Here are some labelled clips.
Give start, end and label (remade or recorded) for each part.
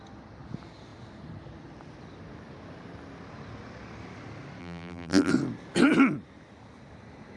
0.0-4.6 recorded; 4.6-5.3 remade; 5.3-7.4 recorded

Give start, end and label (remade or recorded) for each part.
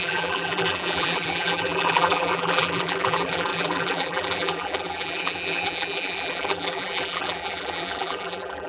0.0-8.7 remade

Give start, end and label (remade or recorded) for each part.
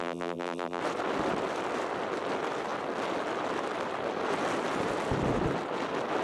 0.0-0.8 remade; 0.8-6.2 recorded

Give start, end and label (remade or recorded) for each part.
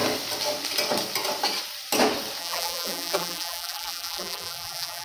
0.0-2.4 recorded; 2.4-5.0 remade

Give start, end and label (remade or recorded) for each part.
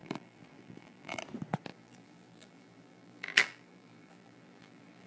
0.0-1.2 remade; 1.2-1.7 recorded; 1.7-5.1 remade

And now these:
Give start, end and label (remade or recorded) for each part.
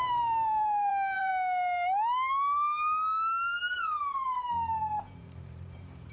0.0-1.3 remade; 1.3-5.0 recorded; 5.0-6.1 remade